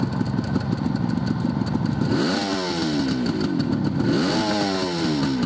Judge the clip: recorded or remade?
recorded